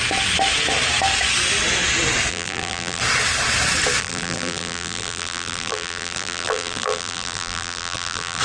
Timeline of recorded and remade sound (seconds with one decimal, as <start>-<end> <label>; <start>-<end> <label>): 0.0-2.3 recorded; 2.3-3.0 remade; 3.0-4.0 recorded; 4.0-8.4 remade